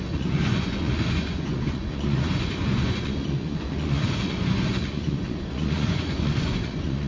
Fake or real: fake